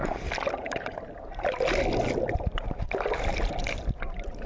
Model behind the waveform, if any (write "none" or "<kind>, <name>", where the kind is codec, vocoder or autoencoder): none